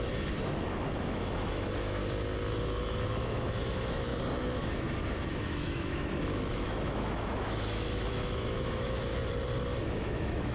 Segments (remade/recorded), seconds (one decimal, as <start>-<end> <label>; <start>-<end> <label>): 0.0-2.0 remade; 2.0-2.6 recorded; 2.6-4.1 remade; 4.1-5.3 recorded; 5.3-9.1 remade; 9.1-9.9 recorded; 9.9-10.5 remade